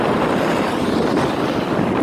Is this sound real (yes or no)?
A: yes